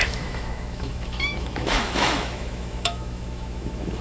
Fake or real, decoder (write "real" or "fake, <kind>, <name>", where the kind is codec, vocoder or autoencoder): fake, autoencoder, DAC-VAE